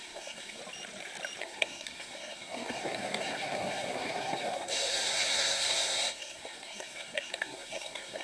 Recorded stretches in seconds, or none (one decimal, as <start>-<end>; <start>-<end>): 0.6-1.4